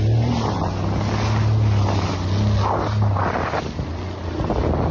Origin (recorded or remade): recorded